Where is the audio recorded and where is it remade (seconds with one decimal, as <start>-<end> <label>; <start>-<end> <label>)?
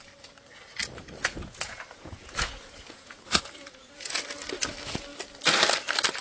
0.0-1.2 recorded; 1.2-4.2 remade; 4.2-6.2 recorded